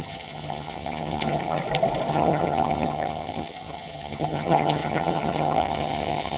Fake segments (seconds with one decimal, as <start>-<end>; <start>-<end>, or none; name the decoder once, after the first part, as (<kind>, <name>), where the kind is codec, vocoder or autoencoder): 0.0-1.6 (vocoder, HiFi-GAN); 2.1-6.4